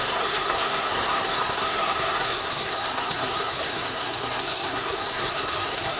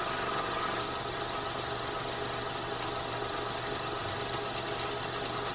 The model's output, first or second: first